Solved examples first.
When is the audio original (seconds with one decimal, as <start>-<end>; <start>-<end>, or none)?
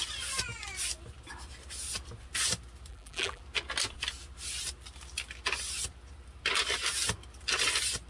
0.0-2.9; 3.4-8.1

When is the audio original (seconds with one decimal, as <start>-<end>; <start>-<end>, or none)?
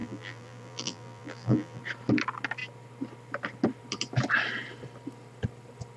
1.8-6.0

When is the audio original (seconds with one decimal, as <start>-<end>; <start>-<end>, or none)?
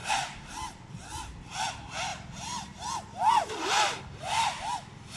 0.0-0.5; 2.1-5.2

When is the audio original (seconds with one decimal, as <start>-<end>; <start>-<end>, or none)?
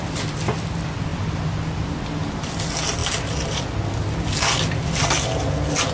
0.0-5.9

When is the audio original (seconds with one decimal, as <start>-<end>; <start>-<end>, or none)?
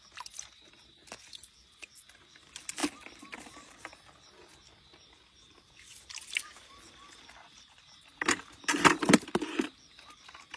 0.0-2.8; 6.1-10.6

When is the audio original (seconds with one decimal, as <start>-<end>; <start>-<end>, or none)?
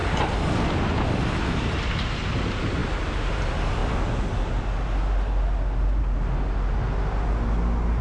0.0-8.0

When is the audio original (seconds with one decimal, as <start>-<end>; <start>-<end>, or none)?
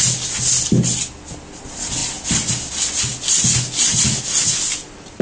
0.0-5.2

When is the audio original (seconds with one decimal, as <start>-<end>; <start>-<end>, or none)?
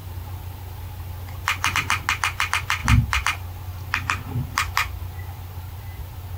0.0-6.4